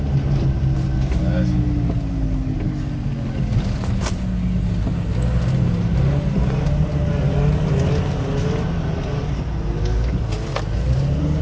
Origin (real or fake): real